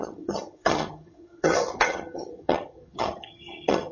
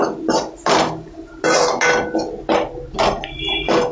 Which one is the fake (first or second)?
first